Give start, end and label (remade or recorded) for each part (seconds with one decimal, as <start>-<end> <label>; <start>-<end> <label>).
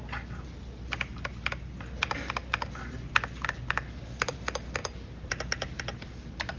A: 0.0-4.8 recorded; 4.8-5.3 remade; 5.3-6.6 recorded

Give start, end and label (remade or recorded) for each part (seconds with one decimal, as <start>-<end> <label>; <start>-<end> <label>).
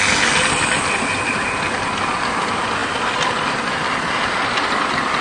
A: 0.0-5.2 recorded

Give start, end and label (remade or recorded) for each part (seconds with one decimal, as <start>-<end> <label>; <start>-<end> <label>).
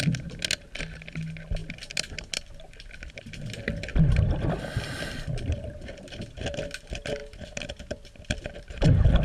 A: 0.0-9.2 recorded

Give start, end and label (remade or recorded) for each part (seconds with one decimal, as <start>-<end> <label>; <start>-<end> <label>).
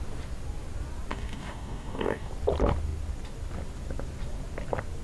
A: 0.0-1.1 recorded; 1.1-2.3 remade; 2.3-5.0 recorded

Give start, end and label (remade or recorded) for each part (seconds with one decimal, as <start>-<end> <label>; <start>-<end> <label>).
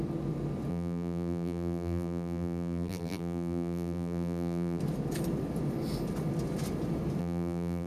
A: 0.0-0.7 recorded; 0.7-4.8 remade; 4.8-7.2 recorded; 7.2-7.9 remade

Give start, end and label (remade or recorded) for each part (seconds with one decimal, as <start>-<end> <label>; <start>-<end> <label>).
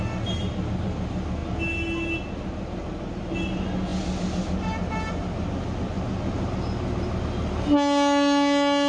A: 0.0-8.9 recorded